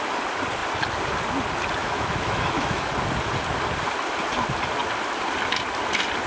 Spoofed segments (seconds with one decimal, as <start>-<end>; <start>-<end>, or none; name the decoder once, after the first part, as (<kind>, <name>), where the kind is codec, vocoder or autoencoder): 1.8-2.9 (autoencoder, DAC-VAE)